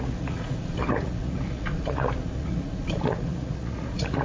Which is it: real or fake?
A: fake